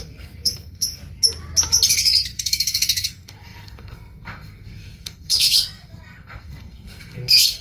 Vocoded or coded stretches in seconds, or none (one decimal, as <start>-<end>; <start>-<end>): 0.0-1.0; 1.9-7.6

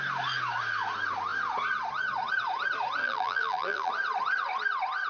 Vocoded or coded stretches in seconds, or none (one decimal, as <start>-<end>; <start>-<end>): 3.0-3.9

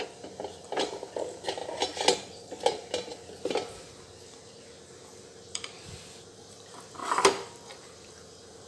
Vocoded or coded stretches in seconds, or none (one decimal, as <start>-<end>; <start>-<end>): 0.0-1.6; 6.5-8.7

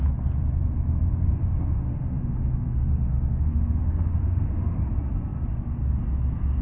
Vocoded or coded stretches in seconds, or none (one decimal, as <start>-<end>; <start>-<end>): 1.4-4.8

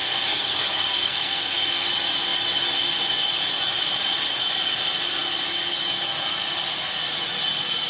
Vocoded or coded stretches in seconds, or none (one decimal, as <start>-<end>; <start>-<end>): 0.0-1.9

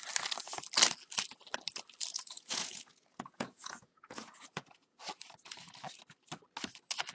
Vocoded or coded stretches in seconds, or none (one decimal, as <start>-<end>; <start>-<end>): 2.1-5.0

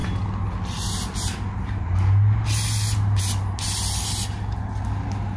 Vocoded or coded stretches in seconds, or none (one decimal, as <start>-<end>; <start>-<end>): none